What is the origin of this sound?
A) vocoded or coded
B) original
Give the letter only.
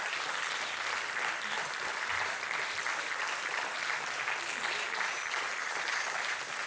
A